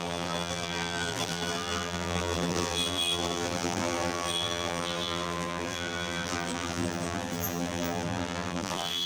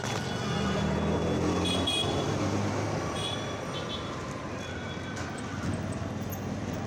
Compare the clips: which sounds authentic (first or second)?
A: second